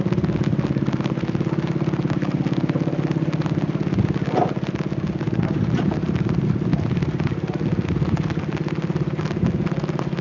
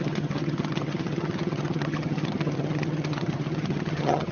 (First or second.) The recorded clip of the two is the first